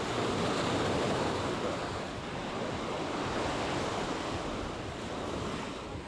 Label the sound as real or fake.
real